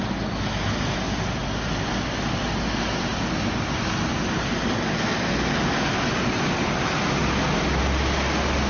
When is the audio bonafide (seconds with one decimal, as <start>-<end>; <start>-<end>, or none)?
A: 0.0-8.7